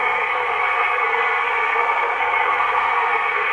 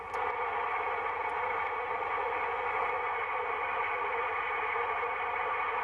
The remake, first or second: first